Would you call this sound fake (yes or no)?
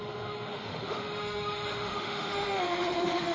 yes